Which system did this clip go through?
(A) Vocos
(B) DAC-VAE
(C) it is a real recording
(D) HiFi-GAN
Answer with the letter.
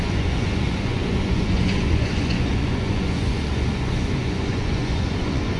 A